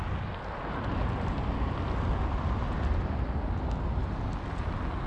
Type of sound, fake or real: real